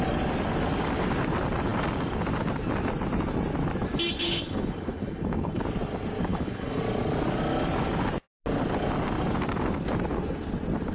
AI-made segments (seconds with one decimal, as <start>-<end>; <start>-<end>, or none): 4.2-5.6; 6.3-6.8